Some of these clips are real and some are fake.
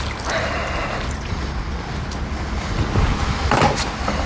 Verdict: real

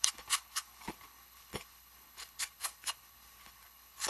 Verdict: fake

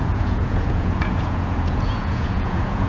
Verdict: fake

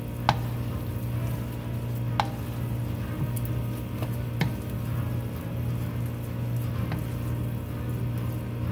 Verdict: real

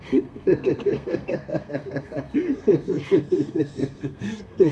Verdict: fake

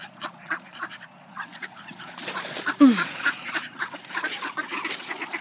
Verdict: fake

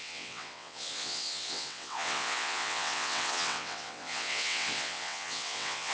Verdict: fake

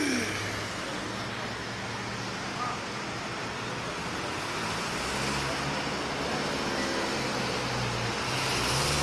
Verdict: real